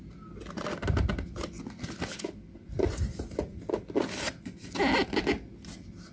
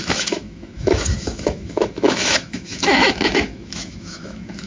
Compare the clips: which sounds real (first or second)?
first